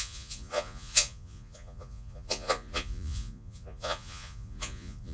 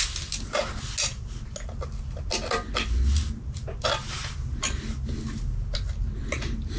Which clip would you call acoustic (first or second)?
second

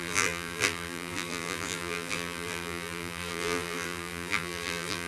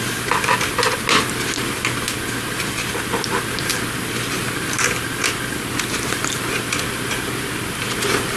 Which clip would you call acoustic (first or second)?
second